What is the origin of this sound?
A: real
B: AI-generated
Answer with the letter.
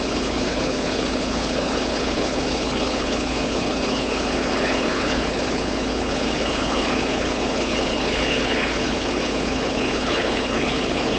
B